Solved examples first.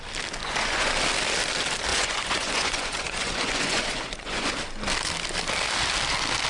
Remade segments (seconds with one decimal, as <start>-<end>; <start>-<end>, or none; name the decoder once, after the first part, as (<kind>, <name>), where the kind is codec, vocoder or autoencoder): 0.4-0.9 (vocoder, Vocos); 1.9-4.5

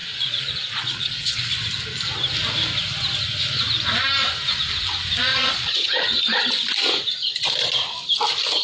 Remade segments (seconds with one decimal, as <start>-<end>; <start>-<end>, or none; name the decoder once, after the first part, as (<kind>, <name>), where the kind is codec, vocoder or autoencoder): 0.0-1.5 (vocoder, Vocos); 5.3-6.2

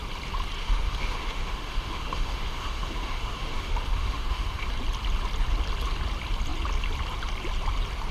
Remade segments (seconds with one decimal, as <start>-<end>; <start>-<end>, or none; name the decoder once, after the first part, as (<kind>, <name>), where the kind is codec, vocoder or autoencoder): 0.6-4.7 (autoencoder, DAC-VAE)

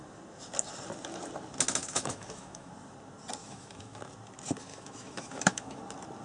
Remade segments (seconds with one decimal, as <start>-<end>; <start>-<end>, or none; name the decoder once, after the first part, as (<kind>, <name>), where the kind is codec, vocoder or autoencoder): 1.8-2.7 (autoencoder, DAC-VAE); 3.4-4.0; 4.7-5.8

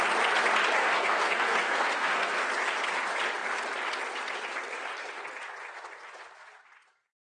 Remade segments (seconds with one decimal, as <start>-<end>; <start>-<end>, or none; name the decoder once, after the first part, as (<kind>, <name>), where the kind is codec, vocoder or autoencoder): 0.8-2.4 (codec, SNAC)

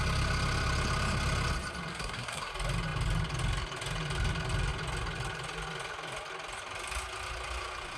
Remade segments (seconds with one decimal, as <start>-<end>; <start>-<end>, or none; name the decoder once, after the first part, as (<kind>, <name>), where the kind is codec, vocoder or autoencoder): 1.9-2.5 (codec, SNAC)

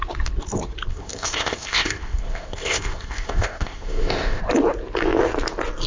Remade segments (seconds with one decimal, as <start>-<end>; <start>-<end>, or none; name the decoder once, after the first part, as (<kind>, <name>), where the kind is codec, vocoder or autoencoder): 0.9-4.4 (codec, ZipCodec)

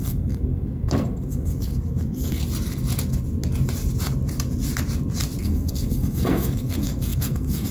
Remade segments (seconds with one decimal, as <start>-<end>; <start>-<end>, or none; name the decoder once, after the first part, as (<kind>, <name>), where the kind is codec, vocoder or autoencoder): 0.0-2.4 (codec, SNAC); 5.4-7.7